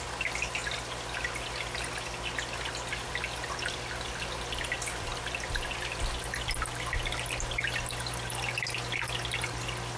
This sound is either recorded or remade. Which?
recorded